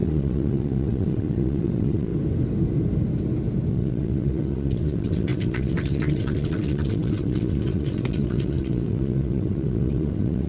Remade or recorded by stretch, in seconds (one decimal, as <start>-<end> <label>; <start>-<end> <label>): 0.0-2.1 remade; 2.1-3.7 recorded; 3.7-10.5 remade